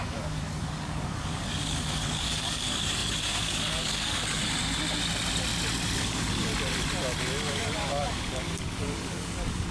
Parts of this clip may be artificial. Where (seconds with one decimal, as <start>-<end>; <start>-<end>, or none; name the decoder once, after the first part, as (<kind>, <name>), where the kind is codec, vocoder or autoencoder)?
0.0-4.4 (codec, DAC); 6.0-6.5; 7.5-9.7